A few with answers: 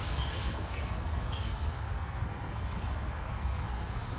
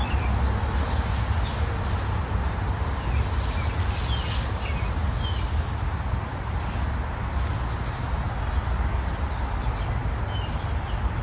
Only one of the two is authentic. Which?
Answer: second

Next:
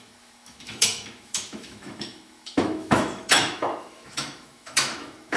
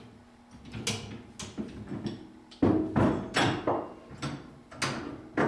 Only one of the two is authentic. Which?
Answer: second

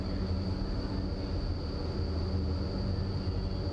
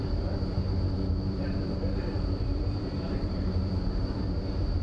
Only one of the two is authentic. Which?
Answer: first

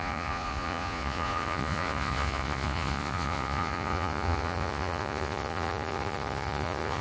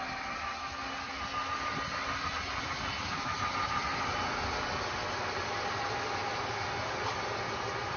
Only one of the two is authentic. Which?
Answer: second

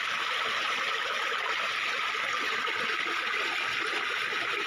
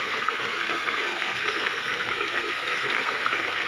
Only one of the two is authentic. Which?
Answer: first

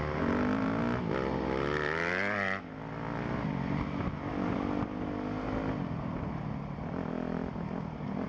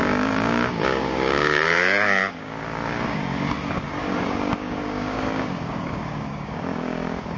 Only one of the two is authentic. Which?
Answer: first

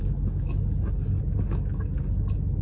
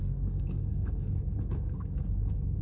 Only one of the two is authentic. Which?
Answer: first